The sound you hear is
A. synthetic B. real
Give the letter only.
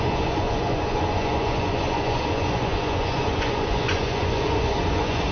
A